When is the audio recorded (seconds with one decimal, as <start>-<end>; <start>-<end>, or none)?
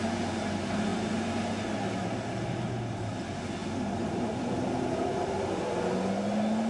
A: 0.0-3.6; 5.9-6.7